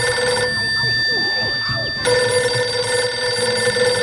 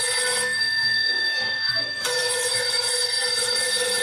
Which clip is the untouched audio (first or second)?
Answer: first